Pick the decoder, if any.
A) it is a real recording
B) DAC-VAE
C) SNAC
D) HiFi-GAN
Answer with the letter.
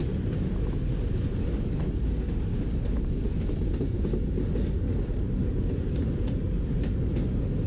A